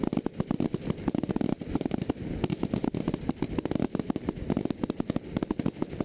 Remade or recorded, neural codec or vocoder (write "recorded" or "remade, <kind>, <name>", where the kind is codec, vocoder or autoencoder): recorded